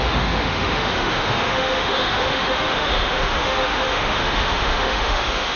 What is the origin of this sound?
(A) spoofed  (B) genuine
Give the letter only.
A